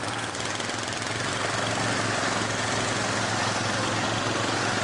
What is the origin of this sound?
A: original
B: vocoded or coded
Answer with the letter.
A